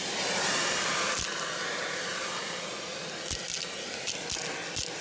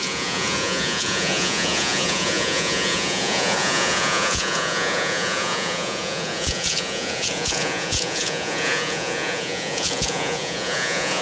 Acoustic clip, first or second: first